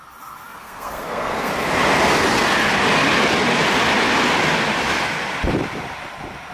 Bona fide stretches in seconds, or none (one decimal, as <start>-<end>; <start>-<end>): 0.0-0.5; 1.5-6.5